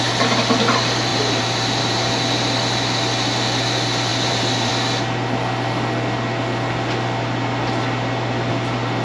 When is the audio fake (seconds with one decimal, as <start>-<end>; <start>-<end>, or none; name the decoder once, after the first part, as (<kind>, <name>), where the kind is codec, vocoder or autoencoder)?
1.1-2.1 (vocoder, BigVGAN v2); 4.1-4.7